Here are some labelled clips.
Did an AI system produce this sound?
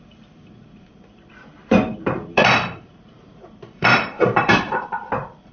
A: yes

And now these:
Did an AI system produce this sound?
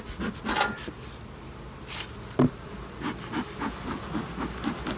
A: no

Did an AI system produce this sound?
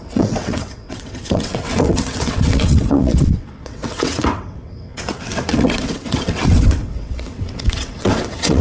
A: yes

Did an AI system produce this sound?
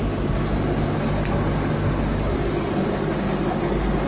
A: no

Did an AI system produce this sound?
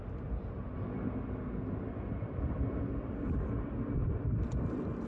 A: no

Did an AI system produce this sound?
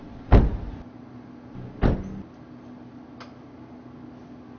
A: no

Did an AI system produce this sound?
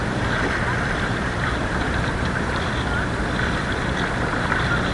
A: yes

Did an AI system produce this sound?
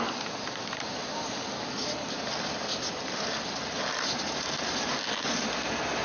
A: no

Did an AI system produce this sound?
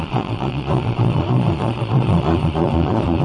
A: yes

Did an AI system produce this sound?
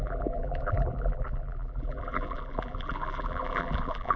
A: yes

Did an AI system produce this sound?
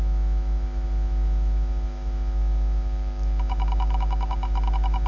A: yes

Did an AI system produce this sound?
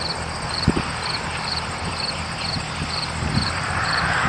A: yes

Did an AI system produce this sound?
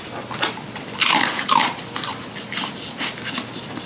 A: no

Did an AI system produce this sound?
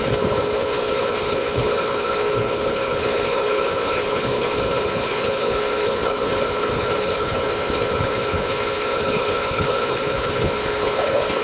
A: yes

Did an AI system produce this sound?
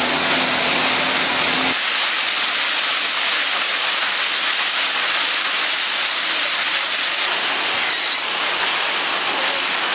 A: no